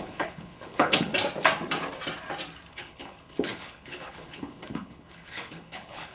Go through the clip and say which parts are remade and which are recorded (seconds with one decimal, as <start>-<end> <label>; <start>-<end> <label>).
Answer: 0.0-1.1 remade; 1.1-2.7 recorded; 2.7-6.1 remade